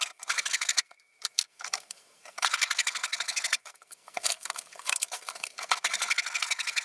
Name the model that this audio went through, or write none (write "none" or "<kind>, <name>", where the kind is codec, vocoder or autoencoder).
codec, SNAC